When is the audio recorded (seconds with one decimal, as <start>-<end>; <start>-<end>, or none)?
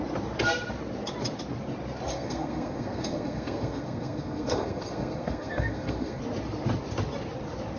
0.0-2.1; 6.2-7.8